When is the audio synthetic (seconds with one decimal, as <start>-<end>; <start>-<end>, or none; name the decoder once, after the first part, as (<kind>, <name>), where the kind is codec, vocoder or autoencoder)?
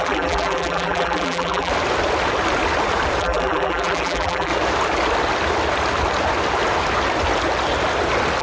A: 0.0-1.7 (vocoder, BigVGAN v2); 3.2-4.5